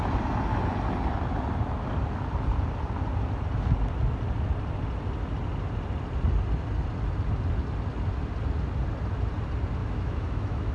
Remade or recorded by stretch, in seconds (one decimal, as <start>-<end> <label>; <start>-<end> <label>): 0.0-9.8 recorded; 9.8-10.7 remade